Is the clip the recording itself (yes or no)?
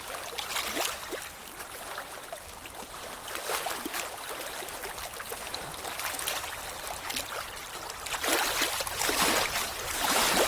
yes